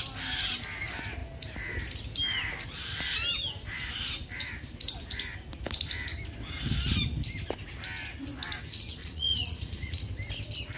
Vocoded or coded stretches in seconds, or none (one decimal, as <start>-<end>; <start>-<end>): 9.0-10.1